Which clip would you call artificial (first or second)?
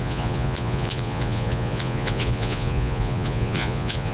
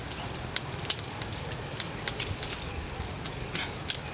first